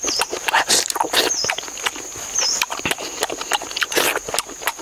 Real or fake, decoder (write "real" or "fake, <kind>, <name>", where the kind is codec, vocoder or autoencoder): real